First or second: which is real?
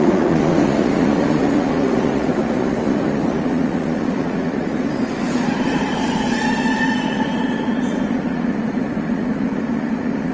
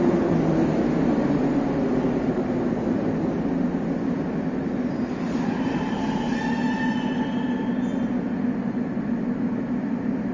second